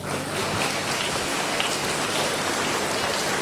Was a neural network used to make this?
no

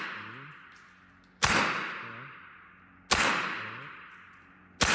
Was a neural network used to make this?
no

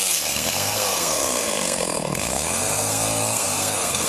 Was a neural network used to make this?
yes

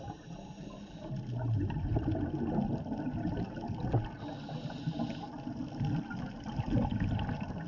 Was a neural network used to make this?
no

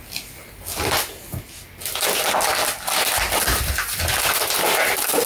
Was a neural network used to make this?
no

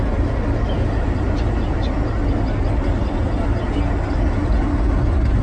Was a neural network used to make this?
no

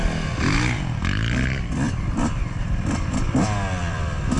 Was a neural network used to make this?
no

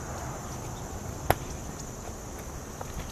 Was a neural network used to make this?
no